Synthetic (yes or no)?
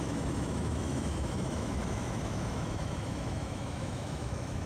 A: yes